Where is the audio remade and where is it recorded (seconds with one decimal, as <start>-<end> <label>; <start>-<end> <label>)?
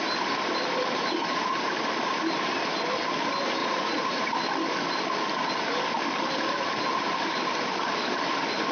0.0-3.6 recorded; 3.6-4.3 remade; 4.3-8.7 recorded